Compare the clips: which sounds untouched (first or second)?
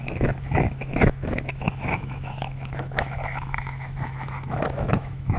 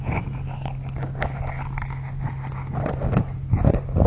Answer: second